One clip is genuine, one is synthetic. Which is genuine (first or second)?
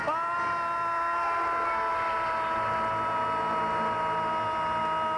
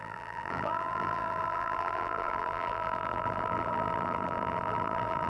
first